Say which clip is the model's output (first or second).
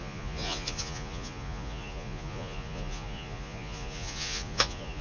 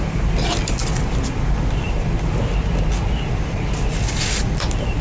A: first